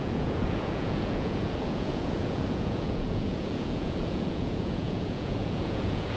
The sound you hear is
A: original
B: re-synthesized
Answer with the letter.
B